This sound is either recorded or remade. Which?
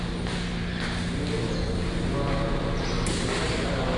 recorded